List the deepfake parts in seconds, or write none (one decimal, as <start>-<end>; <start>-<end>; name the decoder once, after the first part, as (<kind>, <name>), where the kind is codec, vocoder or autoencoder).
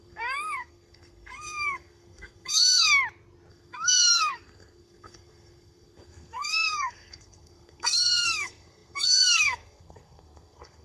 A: 0.0-2.9 (codec, SNAC); 3.5-10.8